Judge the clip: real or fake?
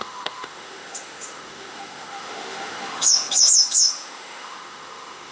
fake